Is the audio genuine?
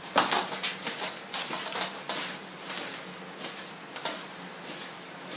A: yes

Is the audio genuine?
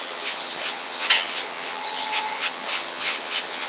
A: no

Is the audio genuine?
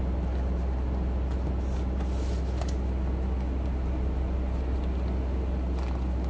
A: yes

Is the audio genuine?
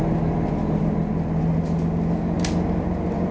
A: yes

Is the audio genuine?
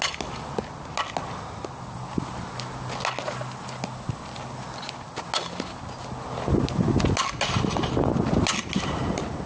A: yes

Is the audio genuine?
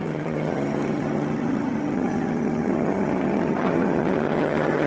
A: no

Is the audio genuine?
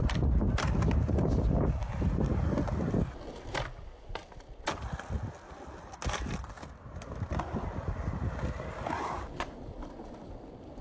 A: yes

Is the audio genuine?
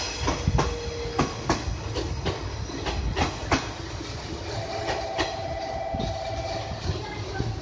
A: yes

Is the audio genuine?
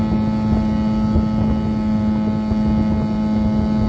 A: yes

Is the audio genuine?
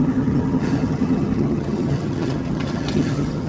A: no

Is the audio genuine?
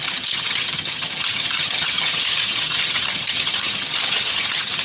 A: no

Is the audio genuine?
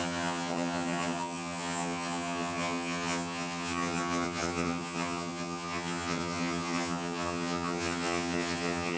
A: no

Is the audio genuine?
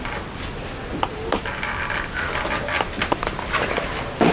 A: yes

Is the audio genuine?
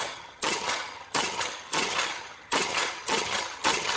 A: no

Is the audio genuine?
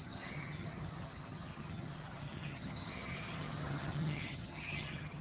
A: no